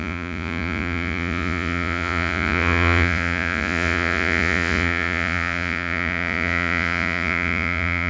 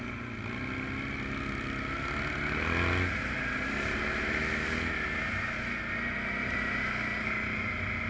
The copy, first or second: first